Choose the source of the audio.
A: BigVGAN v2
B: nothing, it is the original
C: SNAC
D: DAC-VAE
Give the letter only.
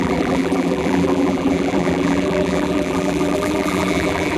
A